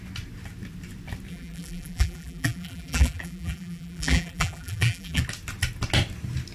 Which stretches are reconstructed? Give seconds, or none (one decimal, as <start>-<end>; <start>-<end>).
1.3-5.2